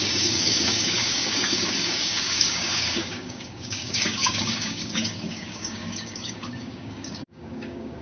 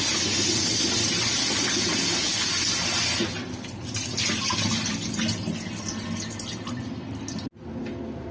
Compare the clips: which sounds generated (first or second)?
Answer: first